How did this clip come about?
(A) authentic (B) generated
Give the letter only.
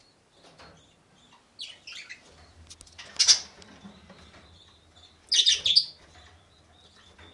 A